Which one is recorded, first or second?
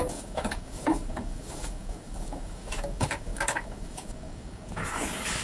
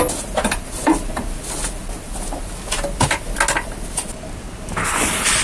second